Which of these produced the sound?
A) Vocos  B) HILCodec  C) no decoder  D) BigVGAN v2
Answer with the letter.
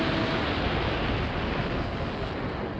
C